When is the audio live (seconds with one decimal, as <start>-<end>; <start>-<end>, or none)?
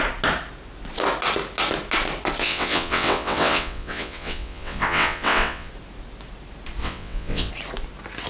0.0-2.4; 5.7-6.8; 7.5-8.3